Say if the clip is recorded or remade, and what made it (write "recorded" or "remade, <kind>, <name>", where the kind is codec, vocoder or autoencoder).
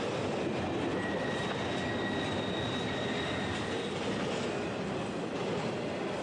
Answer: recorded